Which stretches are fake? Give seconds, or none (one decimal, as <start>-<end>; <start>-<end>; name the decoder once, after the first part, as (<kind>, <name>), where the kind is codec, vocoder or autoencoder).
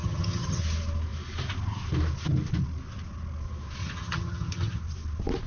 0.0-0.6 (vocoder, HiFi-GAN); 3.8-4.8